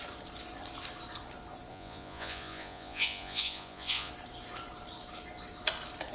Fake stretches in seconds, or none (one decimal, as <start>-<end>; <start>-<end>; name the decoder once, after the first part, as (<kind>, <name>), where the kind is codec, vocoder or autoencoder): 1.7-4.1 (vocoder, Vocos)